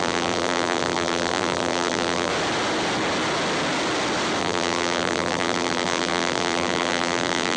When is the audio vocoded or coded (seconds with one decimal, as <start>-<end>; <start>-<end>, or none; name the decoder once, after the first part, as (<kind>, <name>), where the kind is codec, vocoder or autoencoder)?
0.0-2.3 (vocoder, BigVGAN v2); 4.4-7.6